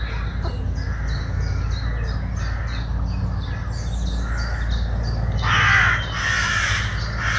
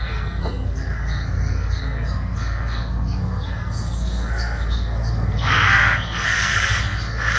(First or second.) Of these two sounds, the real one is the first